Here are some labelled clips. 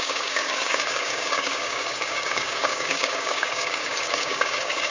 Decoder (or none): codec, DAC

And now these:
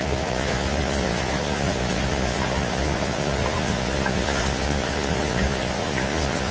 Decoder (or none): vocoder, Vocos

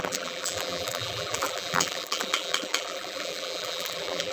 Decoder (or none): vocoder, BigVGAN v2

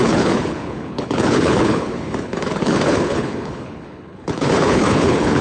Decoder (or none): codec, HILCodec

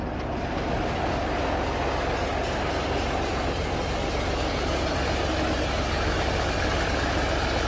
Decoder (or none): none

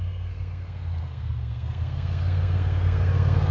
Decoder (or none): codec, SNAC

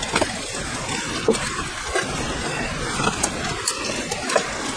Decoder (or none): none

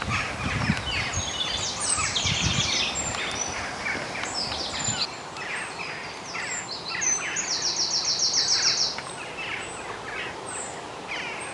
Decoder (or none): none